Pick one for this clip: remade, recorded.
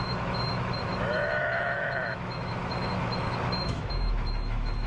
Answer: remade